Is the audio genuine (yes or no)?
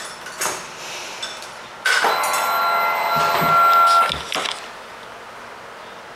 yes